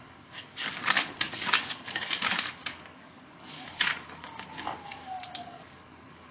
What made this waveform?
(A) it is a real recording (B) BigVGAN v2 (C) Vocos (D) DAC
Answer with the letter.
D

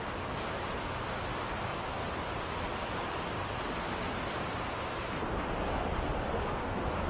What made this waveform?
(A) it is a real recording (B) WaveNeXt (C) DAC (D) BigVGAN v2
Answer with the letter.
A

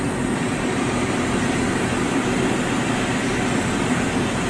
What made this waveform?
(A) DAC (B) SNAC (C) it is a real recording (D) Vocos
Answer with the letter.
C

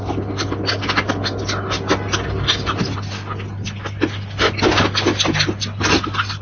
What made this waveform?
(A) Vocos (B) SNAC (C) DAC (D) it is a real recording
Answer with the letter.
D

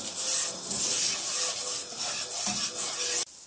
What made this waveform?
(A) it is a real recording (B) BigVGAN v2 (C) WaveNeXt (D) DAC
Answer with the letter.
A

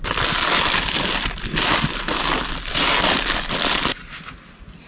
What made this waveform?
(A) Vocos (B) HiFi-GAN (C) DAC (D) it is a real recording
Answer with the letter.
D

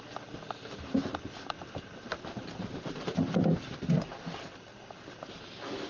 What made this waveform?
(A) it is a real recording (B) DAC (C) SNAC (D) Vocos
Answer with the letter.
A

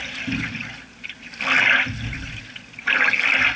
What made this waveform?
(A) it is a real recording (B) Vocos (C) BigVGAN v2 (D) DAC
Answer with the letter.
A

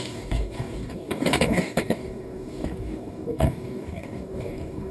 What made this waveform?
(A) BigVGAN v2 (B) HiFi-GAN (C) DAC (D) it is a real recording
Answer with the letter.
C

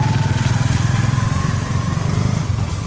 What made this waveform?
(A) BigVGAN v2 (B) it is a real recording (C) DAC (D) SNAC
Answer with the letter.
B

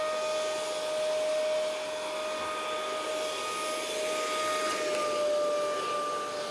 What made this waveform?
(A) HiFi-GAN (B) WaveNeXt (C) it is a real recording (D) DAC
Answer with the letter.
C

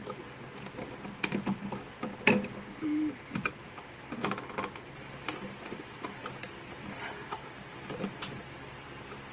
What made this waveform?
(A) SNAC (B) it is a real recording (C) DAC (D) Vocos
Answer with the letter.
B